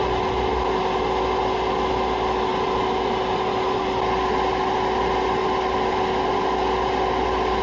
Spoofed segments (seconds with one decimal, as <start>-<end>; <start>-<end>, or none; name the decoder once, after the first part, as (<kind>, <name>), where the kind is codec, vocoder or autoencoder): none